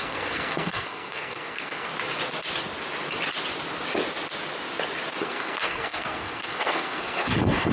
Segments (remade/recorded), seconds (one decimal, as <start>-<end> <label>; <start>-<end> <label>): 0.0-1.9 remade; 1.9-5.2 recorded; 5.2-7.7 remade